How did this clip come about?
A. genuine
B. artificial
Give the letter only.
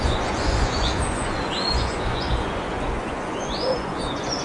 B